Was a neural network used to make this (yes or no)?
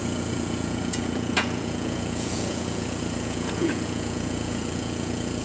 yes